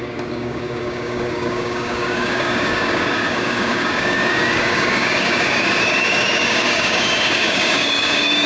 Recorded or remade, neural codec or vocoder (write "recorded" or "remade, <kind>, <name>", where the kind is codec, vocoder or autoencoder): remade, codec, DAC